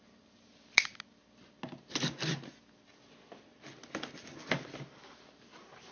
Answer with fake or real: real